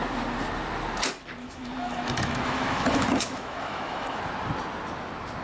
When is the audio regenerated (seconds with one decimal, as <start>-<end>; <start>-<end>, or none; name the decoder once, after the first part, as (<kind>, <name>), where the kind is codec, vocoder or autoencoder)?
1.4-4.2 (autoencoder, DAC-VAE)